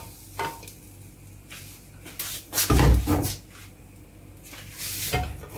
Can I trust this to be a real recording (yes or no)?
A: yes